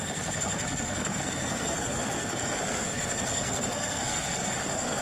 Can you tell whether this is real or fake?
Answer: fake